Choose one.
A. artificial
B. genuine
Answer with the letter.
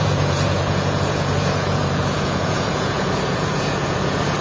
A